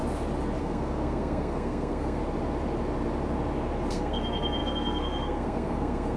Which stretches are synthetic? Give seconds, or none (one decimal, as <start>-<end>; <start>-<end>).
0.6-2.2; 3.9-6.2